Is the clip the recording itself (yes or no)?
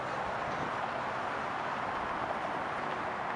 yes